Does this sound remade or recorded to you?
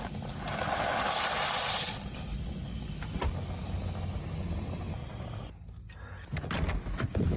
recorded